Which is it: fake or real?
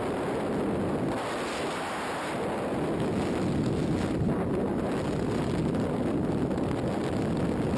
real